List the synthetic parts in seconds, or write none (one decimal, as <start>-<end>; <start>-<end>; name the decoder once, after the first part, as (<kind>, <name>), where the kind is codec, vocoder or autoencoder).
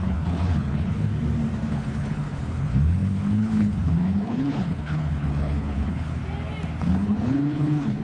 0.0-1.1 (codec, HILCodec); 1.7-6.2; 6.8-8.0